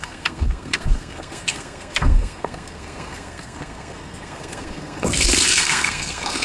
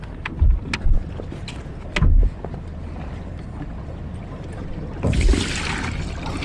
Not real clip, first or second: first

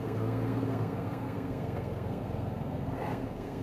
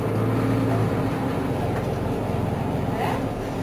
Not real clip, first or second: first